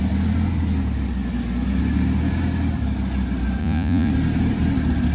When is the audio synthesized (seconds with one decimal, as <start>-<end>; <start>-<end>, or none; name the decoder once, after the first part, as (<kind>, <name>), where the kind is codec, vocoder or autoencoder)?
3.6-4.1 (vocoder, Vocos)